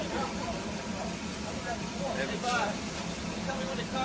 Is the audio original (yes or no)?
no